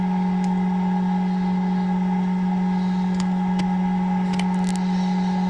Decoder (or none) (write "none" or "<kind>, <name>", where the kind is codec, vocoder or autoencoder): none